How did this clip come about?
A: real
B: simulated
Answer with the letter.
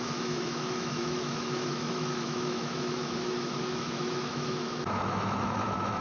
B